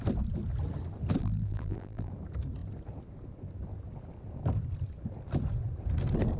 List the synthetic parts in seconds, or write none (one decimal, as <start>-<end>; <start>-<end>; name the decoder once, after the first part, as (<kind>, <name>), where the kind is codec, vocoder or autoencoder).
1.2-2.1 (vocoder, BigVGAN v2)